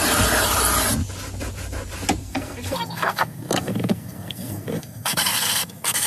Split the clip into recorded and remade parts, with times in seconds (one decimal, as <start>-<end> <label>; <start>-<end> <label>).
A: 0.0-2.2 recorded; 2.2-6.1 remade